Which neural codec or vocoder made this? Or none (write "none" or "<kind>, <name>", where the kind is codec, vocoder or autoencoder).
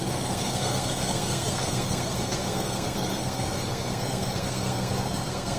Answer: codec, SNAC